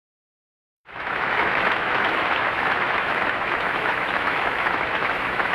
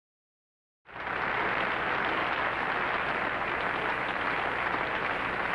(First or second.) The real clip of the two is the second